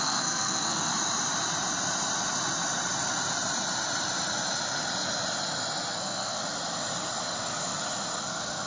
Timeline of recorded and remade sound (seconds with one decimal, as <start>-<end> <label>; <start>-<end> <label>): 0.0-0.9 remade; 0.9-5.9 recorded; 5.9-6.4 remade; 6.4-8.2 recorded; 8.2-8.7 remade